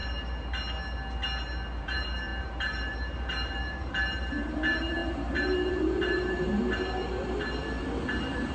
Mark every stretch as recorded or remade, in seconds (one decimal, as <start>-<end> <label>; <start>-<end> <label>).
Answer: 0.0-1.8 recorded; 1.8-6.5 remade; 6.5-7.8 recorded; 7.8-8.5 remade